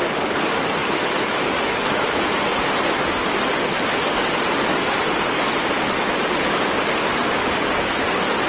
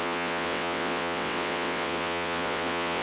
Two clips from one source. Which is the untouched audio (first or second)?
first